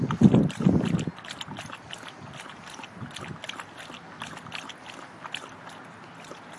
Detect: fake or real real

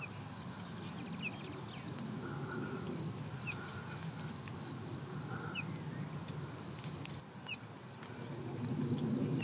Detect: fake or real real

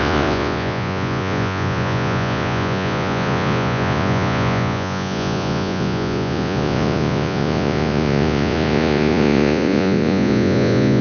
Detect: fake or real fake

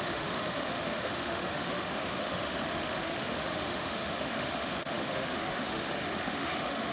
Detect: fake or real fake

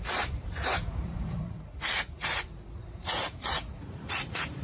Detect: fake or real fake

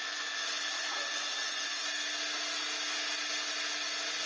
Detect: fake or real real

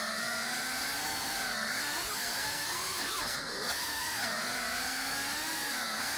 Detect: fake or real fake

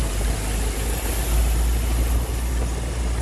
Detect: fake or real real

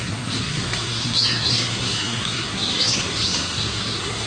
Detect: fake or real fake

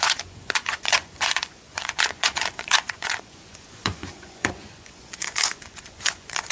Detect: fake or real fake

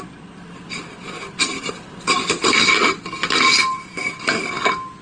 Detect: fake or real fake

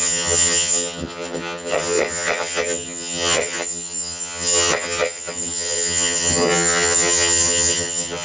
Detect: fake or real fake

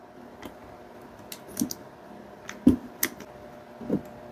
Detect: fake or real real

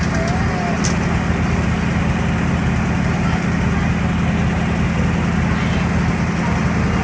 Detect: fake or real real